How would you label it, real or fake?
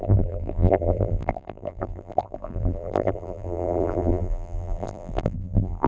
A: fake